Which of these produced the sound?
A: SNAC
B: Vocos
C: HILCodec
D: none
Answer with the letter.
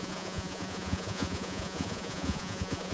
B